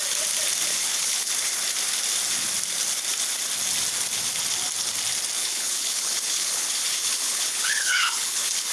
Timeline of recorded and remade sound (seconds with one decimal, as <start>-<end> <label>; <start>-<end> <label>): 0.0-0.7 recorded; 0.7-1.3 remade; 1.3-5.4 recorded; 5.4-8.7 remade

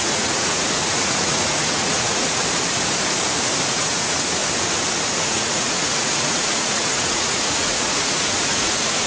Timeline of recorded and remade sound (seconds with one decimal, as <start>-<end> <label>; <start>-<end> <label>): 0.0-2.4 remade; 2.4-3.7 recorded; 3.7-4.4 remade; 4.4-5.2 recorded; 5.2-9.1 remade

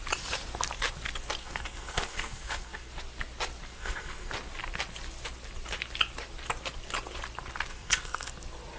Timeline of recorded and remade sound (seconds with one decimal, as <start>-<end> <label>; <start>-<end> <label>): 0.0-1.4 recorded; 1.4-2.9 remade; 2.9-3.7 recorded; 3.7-4.3 remade; 4.3-7.7 recorded; 7.7-8.3 remade; 8.3-8.8 recorded

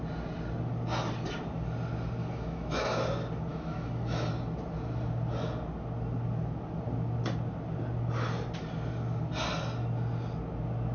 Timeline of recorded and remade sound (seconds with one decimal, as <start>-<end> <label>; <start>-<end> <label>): 0.0-2.2 recorded; 2.2-2.9 remade; 2.9-3.5 recorded; 3.5-4.3 remade; 4.3-10.9 recorded

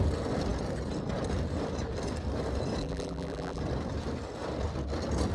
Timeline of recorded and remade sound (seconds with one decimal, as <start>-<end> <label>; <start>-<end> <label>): 0.0-2.8 recorded; 2.8-3.6 remade; 3.6-5.3 recorded

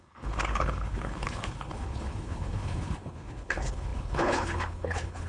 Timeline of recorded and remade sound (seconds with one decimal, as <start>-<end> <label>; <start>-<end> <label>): 0.0-5.3 remade

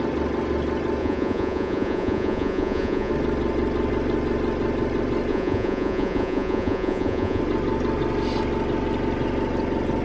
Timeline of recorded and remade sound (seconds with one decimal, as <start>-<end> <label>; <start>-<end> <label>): 0.0-1.0 recorded; 1.0-3.1 remade; 3.1-5.3 recorded; 5.3-7.4 remade; 7.4-10.0 recorded